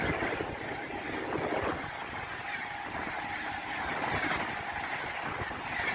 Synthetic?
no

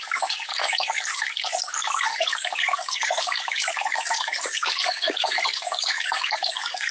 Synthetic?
yes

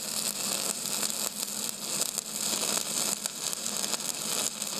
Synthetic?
no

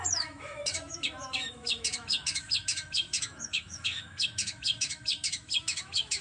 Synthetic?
yes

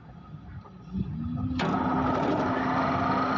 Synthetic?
no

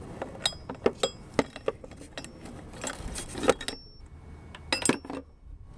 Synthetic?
no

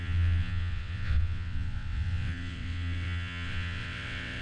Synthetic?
yes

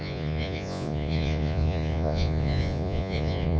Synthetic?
yes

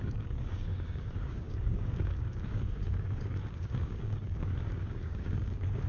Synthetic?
yes